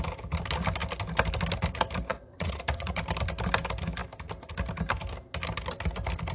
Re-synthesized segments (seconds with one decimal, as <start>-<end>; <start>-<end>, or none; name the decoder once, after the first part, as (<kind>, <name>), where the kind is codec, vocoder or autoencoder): 2.1-3.0 (vocoder, Vocos)